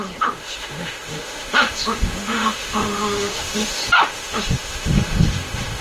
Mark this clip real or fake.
fake